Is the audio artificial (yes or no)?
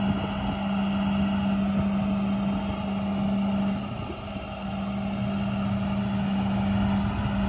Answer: no